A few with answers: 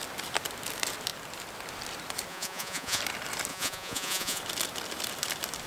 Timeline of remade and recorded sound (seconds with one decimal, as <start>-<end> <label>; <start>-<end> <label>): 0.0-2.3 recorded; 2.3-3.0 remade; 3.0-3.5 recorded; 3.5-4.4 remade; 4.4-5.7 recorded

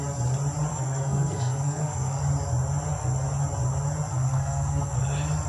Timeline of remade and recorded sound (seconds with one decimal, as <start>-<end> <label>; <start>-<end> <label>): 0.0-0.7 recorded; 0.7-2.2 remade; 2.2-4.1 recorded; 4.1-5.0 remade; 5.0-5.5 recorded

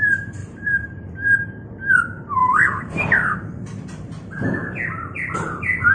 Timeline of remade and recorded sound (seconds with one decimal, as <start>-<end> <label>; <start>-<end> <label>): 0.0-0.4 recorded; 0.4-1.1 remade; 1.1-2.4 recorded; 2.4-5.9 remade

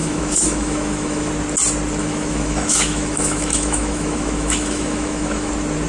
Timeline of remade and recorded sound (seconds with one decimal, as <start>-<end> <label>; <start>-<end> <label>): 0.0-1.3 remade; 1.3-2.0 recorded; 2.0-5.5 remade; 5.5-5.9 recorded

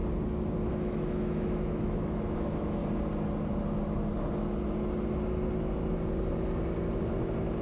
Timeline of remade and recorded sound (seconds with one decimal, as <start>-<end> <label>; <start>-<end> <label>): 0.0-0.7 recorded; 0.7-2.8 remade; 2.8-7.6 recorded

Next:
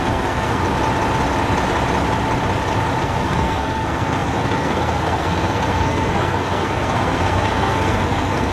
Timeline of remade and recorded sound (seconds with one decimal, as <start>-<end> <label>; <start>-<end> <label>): 0.0-0.6 remade; 0.6-3.0 recorded; 3.0-8.5 remade